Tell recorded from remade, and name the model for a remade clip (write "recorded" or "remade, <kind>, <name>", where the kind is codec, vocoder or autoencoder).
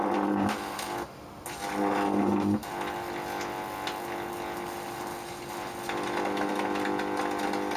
recorded